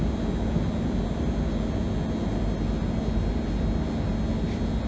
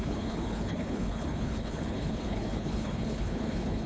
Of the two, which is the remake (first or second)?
second